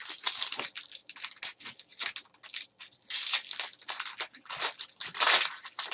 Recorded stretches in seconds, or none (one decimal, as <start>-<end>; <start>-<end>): 1.0-4.5

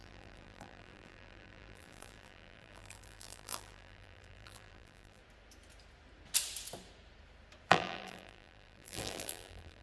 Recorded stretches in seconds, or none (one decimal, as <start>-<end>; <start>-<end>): 5.2-7.7

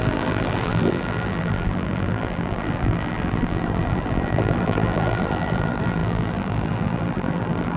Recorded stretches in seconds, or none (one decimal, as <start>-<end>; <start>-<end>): none

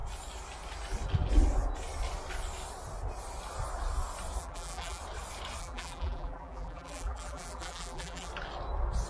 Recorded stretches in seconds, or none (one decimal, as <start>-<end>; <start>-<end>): 0.0-4.4; 5.0-5.6; 8.3-9.1

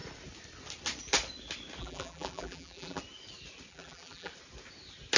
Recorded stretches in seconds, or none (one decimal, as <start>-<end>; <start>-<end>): 0.0-1.8; 3.0-3.7; 4.3-5.2

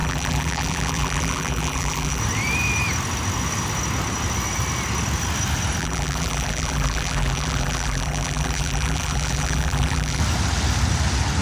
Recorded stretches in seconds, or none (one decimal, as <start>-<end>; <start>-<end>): 2.2-5.8; 10.2-11.4

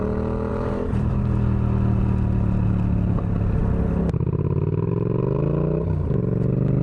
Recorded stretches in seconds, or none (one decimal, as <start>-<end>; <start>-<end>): 0.0-0.5; 1.2-6.8

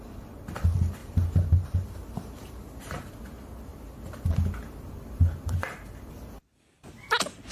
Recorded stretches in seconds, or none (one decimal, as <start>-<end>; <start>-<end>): 0.0-1.0; 2.8-7.5